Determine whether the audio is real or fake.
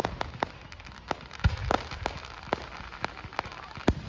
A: real